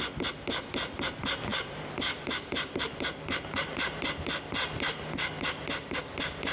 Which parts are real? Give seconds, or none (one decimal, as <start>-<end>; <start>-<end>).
0.0-1.5; 4.1-6.5